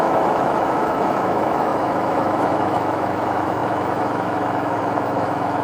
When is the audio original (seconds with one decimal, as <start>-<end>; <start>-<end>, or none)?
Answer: none